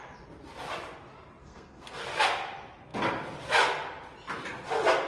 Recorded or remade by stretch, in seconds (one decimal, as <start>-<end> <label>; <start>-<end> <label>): 0.0-1.4 recorded; 1.4-2.0 remade; 2.0-5.1 recorded